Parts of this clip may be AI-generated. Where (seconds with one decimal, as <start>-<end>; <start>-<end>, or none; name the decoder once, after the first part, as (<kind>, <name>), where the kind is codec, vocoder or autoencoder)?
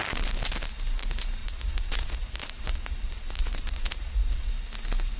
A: 1.4-4.5 (vocoder, Vocos)